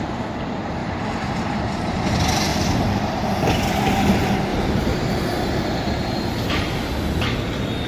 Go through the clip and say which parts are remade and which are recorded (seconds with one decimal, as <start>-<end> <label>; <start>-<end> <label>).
0.0-0.8 recorded; 0.8-2.0 remade; 2.0-2.5 recorded; 2.5-3.5 remade; 3.5-4.5 recorded; 4.5-6.9 remade; 6.9-7.9 recorded